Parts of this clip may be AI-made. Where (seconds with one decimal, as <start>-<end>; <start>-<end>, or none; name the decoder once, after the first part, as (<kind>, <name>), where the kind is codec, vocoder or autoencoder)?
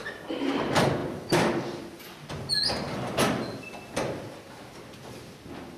none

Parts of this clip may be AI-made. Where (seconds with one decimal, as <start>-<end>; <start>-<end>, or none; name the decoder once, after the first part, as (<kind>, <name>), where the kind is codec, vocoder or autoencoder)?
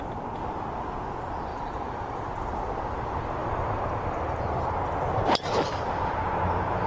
1.5-2.2 (vocoder, BigVGAN v2); 3.4-4.4